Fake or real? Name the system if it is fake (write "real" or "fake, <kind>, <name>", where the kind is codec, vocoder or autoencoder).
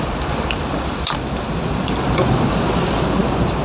fake, vocoder, BigVGAN v2